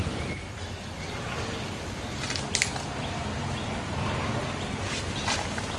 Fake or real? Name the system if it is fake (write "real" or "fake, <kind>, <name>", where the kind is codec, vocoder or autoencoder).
fake, vocoder, BigVGAN v2